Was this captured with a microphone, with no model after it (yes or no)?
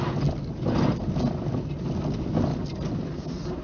yes